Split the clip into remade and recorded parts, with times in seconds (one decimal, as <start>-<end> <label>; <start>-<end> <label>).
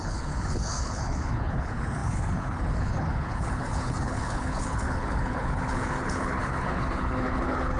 0.0-7.8 remade